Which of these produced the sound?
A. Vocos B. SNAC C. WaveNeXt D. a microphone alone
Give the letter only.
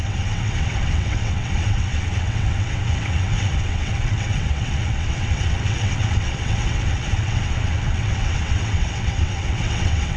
C